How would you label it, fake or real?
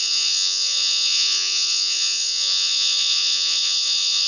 fake